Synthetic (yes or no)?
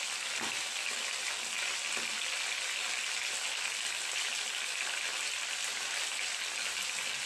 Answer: no